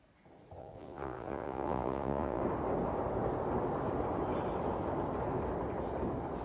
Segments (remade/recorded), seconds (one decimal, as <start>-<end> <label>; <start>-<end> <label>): 0.0-0.6 recorded; 0.6-2.4 remade; 2.4-6.4 recorded